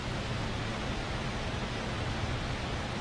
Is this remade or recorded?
recorded